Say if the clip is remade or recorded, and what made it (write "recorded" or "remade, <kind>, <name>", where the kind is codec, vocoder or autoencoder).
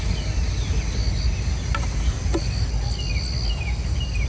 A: recorded